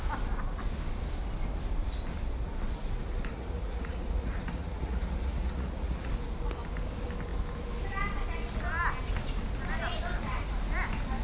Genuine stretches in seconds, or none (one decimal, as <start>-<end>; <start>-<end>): 0.0-3.3; 6.1-11.2